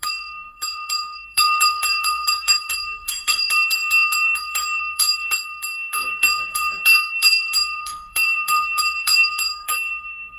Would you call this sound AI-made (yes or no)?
yes